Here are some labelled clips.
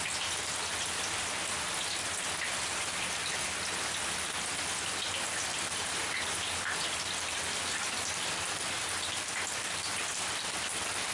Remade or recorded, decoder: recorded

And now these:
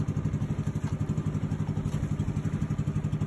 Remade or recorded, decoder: recorded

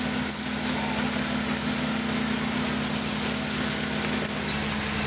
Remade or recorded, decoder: recorded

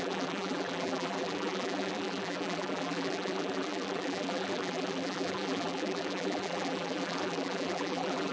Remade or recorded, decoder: remade, vocoder, BigVGAN v2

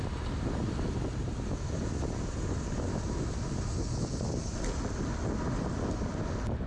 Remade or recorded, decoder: recorded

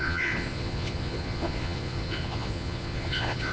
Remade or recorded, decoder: remade, vocoder, Vocos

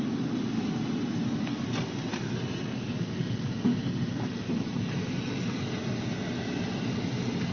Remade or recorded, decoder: recorded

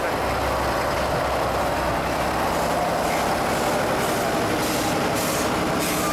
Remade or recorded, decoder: recorded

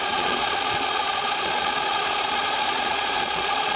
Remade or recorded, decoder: remade, vocoder, Vocos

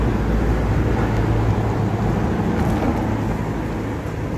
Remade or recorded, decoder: recorded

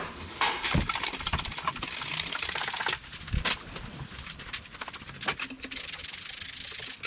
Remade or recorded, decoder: recorded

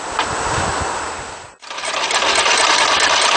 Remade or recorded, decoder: recorded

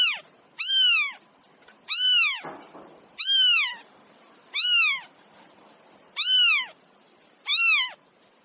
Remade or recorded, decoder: recorded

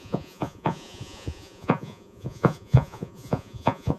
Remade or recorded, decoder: remade, vocoder, Vocos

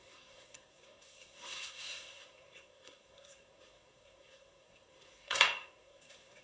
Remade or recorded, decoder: remade, codec, SNAC